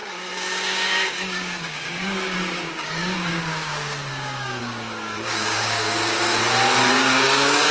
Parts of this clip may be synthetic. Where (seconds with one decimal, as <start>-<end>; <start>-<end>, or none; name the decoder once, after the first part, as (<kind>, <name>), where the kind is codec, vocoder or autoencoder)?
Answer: 0.0-6.4 (codec, DAC); 6.9-7.7